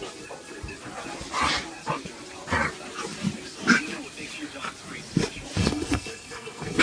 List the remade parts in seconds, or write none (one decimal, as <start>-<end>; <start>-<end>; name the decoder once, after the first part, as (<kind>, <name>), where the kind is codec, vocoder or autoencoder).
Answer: 5.6-6.8 (codec, SNAC)